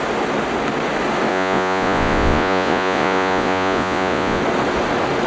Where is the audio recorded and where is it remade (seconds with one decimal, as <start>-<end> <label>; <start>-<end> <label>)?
0.0-1.3 recorded; 1.3-4.4 remade; 4.4-5.3 recorded